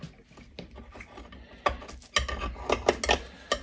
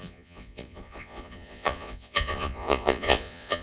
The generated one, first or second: second